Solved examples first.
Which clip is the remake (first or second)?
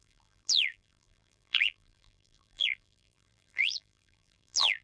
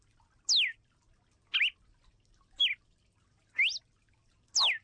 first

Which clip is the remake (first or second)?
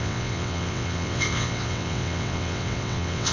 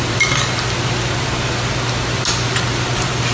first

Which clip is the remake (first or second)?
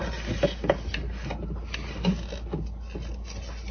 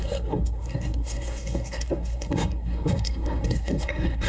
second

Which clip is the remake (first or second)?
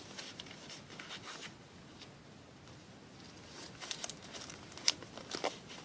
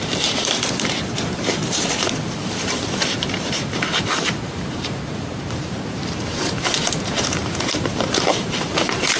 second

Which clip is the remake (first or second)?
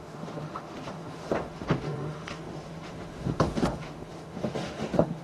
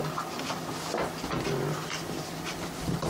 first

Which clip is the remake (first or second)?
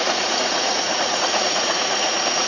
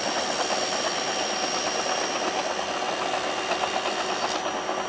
first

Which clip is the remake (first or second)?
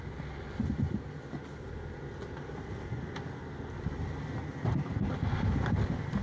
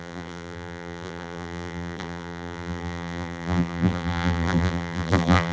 second